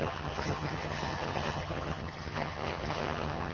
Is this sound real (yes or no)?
no